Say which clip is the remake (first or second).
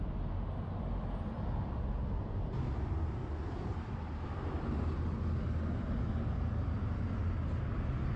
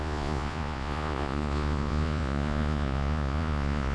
second